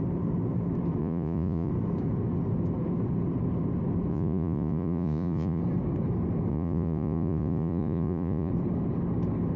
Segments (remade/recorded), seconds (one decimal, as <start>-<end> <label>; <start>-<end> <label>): 0.0-1.0 recorded; 1.0-1.7 remade; 1.7-4.1 recorded; 4.1-5.6 remade; 5.6-6.5 recorded; 6.5-8.5 remade; 8.5-9.6 recorded